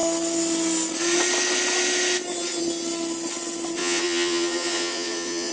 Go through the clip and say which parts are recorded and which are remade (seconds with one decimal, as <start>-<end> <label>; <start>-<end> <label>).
0.0-3.8 recorded; 3.8-5.5 remade